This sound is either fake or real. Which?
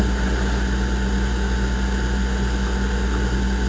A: real